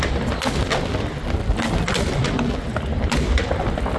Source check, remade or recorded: recorded